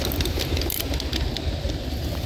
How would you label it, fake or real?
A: real